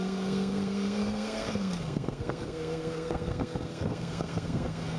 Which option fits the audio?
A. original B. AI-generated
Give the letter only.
B